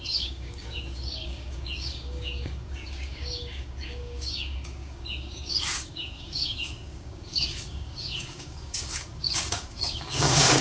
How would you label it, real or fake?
fake